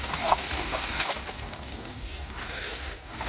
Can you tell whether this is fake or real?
fake